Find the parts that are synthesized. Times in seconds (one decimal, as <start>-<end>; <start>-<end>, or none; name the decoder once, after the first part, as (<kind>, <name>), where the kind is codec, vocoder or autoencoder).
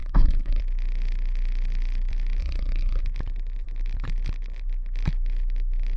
0.0-0.6 (codec, SNAC); 2.4-3.0